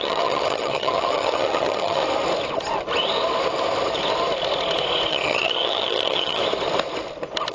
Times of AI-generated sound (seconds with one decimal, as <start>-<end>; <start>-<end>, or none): 0.0-2.0; 5.1-6.4